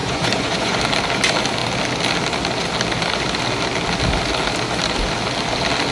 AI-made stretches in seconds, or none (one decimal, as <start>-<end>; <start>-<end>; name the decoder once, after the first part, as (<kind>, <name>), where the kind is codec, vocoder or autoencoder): 0.0-0.8 (vocoder, Vocos)